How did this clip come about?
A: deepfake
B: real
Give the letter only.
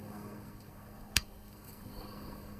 A